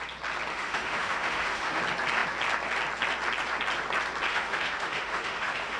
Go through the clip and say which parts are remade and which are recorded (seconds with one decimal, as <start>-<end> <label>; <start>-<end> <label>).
0.0-0.5 recorded; 0.5-1.8 remade; 1.8-4.3 recorded; 4.3-5.8 remade